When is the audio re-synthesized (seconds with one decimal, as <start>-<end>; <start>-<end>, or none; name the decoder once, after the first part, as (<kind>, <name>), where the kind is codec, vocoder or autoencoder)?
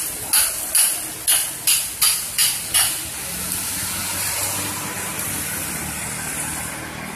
none